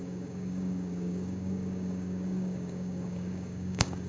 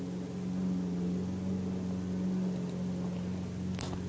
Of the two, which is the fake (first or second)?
first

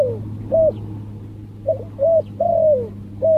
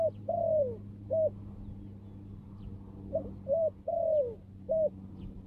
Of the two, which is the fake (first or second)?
second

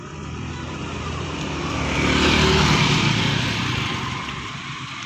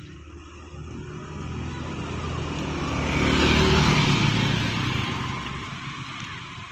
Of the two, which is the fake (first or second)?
first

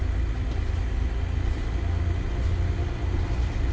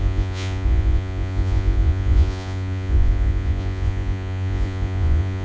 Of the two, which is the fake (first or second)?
second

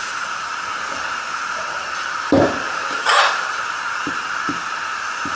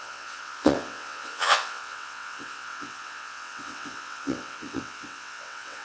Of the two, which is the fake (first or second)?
second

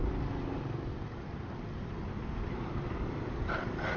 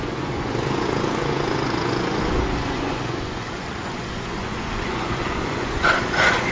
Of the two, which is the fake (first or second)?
second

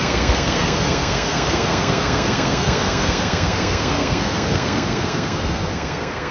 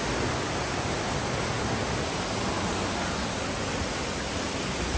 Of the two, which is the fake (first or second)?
first